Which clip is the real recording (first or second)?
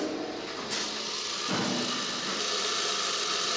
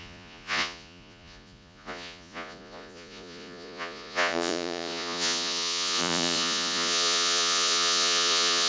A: first